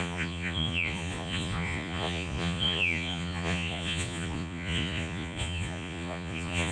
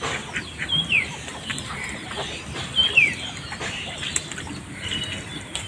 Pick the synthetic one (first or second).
first